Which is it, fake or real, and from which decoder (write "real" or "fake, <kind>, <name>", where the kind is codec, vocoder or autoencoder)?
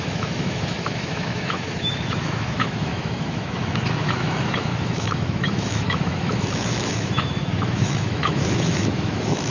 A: fake, autoencoder, DAC-VAE